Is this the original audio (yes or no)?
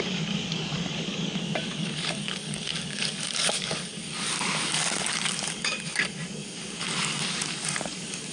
no